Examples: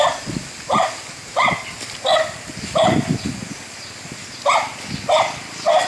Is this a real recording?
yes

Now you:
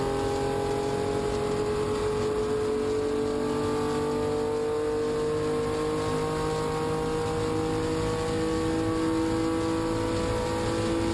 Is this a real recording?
yes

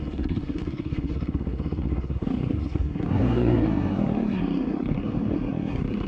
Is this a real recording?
no